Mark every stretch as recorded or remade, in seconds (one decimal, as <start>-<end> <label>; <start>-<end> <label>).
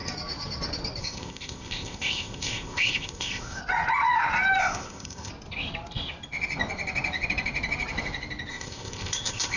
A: 0.0-1.0 recorded; 1.0-3.6 remade; 3.6-4.6 recorded; 4.6-5.3 remade; 5.3-8.5 recorded; 8.5-9.6 remade